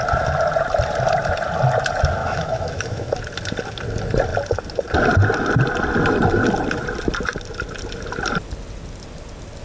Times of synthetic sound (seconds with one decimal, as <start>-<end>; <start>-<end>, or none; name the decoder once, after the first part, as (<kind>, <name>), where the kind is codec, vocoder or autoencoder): 2.2-3.1 (autoencoder, DAC-VAE)